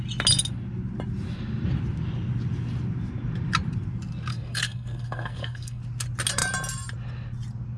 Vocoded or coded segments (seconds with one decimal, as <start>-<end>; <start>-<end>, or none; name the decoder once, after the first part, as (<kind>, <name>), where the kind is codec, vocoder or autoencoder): 4.3-5.8 (codec, SNAC)